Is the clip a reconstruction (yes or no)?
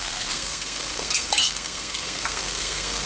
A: yes